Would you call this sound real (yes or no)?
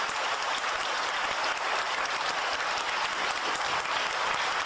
yes